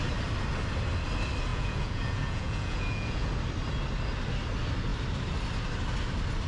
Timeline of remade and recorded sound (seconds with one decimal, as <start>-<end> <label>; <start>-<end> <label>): 0.0-1.5 recorded; 1.5-3.3 remade; 3.3-6.5 recorded